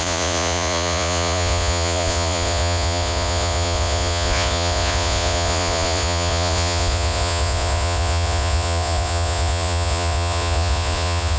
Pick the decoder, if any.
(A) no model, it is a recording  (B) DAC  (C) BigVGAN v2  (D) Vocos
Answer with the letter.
D